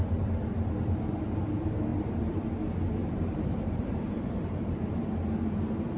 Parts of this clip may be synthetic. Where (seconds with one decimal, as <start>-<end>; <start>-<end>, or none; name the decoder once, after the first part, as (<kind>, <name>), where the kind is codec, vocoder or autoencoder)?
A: 1.9-2.4 (vocoder, BigVGAN v2); 3.0-5.0